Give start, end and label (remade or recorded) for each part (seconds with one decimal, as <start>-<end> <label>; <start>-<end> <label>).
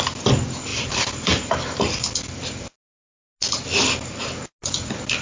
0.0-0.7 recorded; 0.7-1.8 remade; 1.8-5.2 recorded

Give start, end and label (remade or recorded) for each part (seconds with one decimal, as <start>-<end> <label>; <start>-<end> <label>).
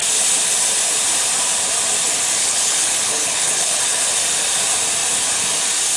0.0-2.4 recorded; 2.4-3.8 remade; 3.8-6.0 recorded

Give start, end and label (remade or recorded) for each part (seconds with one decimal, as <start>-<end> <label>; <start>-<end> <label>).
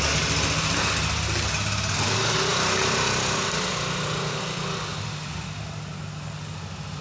0.0-7.0 recorded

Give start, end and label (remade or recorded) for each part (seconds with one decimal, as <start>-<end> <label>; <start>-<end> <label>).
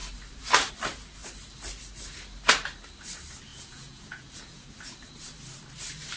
0.0-3.5 recorded; 3.5-4.7 remade; 4.7-6.2 recorded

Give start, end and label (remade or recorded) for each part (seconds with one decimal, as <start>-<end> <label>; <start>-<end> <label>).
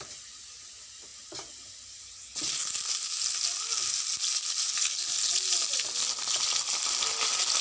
0.0-7.6 recorded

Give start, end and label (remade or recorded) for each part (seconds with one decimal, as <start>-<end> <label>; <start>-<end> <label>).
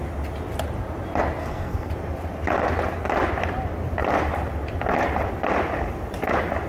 0.0-1.4 recorded; 1.4-1.9 remade; 1.9-6.7 recorded